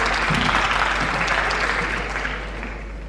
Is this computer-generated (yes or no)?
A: no